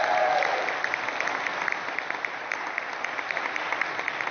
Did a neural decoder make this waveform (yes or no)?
no